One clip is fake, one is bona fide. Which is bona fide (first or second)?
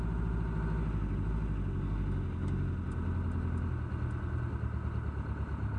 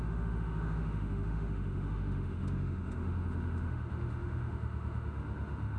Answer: first